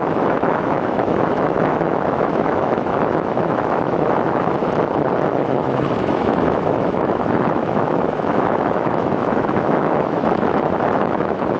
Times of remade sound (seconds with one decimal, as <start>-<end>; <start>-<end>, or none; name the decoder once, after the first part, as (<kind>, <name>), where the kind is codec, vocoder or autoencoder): 0.0-4.6 (autoencoder, DAC-VAE); 5.3-11.6